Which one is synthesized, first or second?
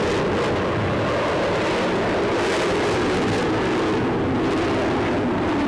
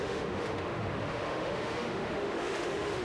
second